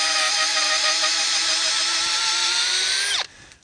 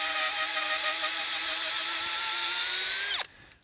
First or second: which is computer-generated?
first